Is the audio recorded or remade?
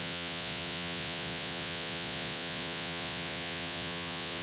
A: remade